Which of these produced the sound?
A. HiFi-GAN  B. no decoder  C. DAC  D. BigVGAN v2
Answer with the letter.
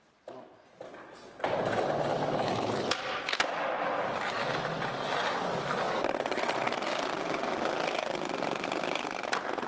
B